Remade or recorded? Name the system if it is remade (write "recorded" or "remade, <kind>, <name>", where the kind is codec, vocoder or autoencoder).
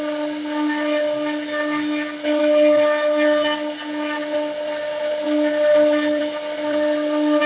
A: recorded